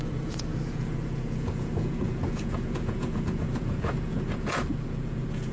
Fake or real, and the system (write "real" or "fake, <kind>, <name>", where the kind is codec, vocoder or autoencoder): fake, vocoder, Vocos